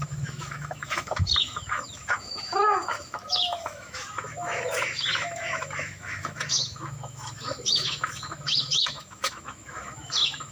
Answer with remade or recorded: remade